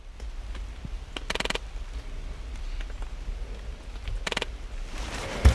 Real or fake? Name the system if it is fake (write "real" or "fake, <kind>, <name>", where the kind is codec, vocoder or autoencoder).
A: real